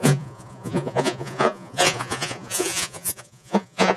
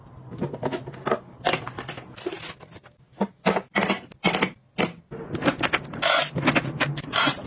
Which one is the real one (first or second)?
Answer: second